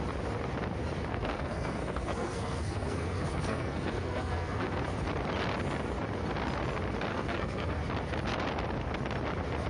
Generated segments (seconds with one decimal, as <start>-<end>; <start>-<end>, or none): 1.1-4.8; 7.1-7.8